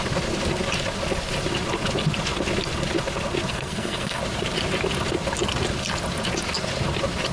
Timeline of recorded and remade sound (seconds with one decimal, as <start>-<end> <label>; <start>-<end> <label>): 0.0-3.5 recorded; 3.5-4.2 remade; 4.2-7.3 recorded